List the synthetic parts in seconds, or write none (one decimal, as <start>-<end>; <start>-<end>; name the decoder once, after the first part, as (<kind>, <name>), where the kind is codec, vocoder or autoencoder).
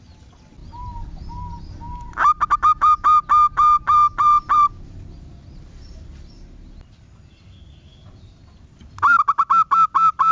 none